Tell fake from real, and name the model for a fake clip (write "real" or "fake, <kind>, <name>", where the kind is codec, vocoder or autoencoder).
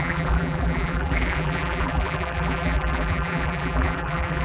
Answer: fake, vocoder, BigVGAN v2